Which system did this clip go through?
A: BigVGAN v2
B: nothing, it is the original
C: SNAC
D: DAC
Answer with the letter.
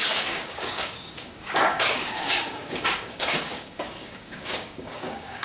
D